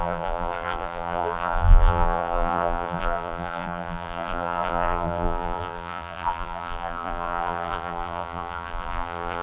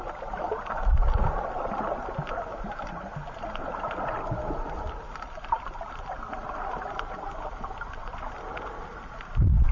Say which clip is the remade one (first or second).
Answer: first